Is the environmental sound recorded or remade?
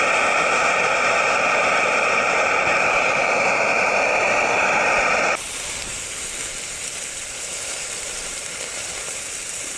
remade